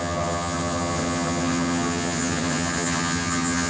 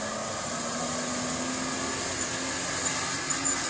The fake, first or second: first